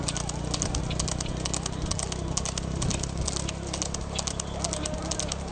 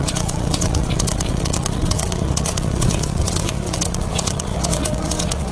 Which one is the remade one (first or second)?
second